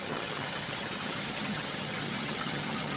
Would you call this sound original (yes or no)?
no